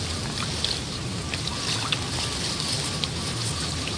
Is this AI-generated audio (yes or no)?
no